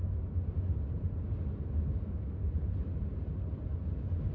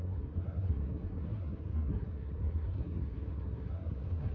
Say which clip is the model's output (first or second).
second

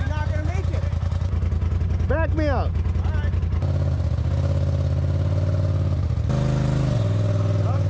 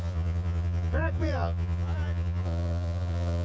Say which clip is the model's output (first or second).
second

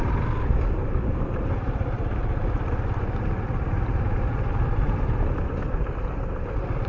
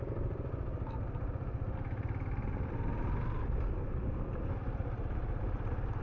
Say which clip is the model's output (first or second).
first